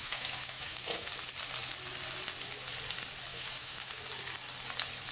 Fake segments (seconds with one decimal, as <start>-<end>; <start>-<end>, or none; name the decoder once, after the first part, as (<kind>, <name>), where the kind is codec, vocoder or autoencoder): 0.0-1.1 (autoencoder, DAC-VAE); 3.3-4.0